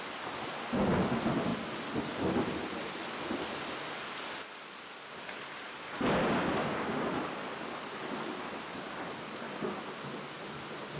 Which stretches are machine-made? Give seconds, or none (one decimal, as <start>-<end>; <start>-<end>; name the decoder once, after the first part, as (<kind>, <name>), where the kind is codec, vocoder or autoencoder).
1.5-2.1 (vocoder, BigVGAN v2)